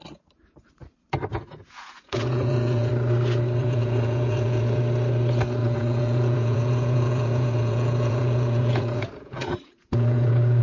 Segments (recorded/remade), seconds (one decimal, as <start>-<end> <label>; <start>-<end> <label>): 0.0-1.3 recorded; 1.3-2.9 remade; 2.9-3.6 recorded; 3.6-4.8 remade; 4.8-5.6 recorded; 5.6-10.6 remade